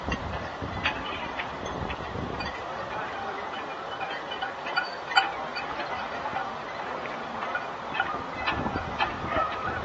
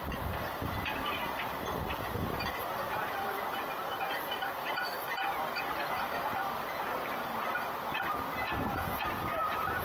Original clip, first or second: second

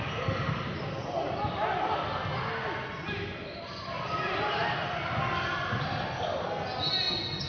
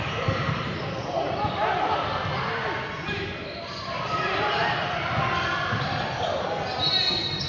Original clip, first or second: first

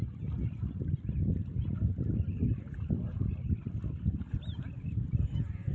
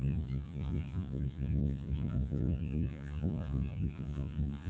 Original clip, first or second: first